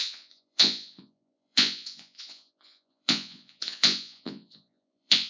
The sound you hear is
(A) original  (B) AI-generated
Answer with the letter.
B